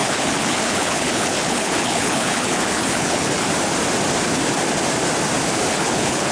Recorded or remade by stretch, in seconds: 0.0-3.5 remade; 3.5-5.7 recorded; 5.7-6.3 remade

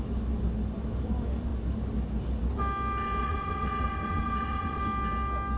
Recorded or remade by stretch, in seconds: 0.0-3.2 recorded; 3.2-4.8 remade; 4.8-5.6 recorded

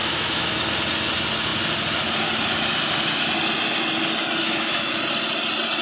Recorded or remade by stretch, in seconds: 0.0-0.5 remade; 0.5-4.4 recorded; 4.4-5.0 remade; 5.0-5.8 recorded